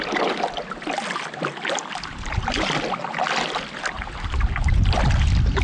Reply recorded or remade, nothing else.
recorded